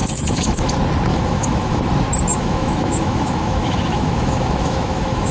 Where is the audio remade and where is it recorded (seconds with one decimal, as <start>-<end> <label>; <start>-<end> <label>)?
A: 0.0-0.7 remade; 0.7-1.1 recorded; 1.1-1.8 remade; 1.8-2.3 recorded; 2.3-5.3 remade